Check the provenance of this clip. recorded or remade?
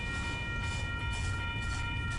recorded